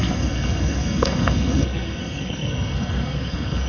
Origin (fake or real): fake